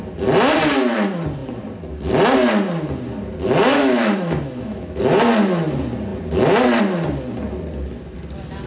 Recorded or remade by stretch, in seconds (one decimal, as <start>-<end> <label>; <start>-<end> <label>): 0.0-3.7 recorded; 3.7-5.0 remade; 5.0-8.7 recorded